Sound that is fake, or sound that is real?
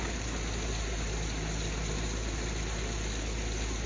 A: real